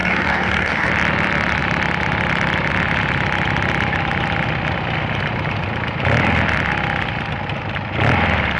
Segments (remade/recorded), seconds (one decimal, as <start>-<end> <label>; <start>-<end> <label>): 0.0-0.9 remade; 0.9-8.6 recorded